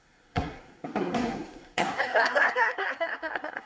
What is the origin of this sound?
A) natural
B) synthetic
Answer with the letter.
B